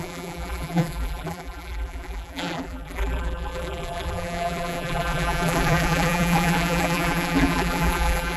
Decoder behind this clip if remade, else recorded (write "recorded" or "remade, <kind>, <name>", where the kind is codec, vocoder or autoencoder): remade, vocoder, BigVGAN v2